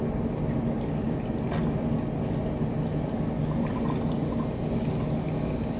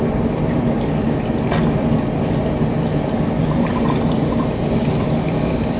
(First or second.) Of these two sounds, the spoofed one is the second